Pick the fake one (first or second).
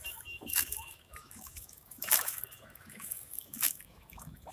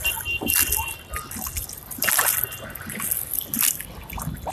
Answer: first